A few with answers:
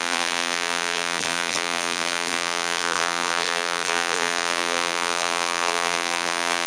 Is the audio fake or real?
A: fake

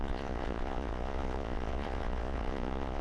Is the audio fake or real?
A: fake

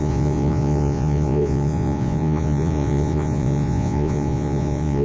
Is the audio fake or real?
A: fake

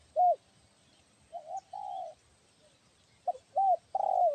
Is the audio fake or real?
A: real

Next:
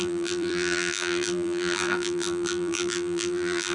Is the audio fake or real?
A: fake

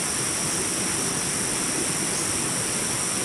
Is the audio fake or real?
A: real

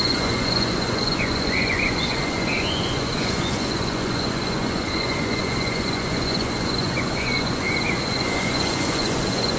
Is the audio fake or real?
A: fake